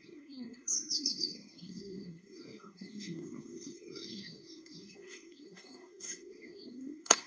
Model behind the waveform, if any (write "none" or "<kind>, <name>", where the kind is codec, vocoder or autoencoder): codec, SNAC